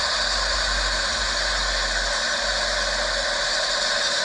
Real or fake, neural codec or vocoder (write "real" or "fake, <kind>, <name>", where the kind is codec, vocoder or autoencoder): real